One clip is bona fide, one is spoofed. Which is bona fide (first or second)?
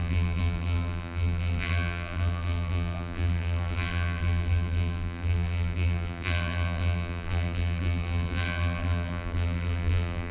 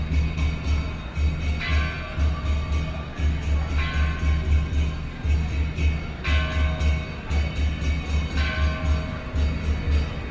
second